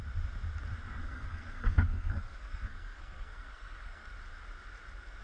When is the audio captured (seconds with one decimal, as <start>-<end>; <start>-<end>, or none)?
0.0-1.0; 4.1-5.2